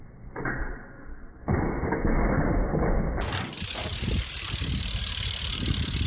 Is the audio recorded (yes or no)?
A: yes